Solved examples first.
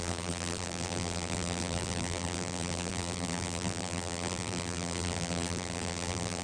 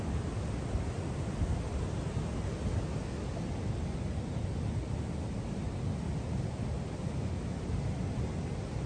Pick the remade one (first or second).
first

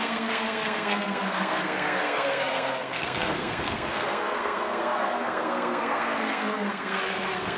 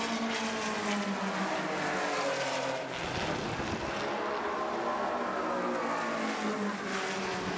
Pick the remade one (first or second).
first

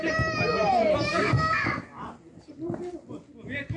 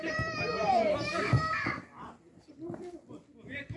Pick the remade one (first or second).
second